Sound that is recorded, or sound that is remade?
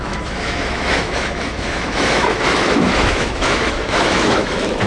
remade